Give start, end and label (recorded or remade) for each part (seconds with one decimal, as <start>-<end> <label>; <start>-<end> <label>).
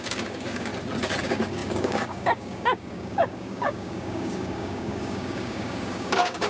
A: 0.0-0.7 remade; 0.7-1.2 recorded; 1.2-6.5 remade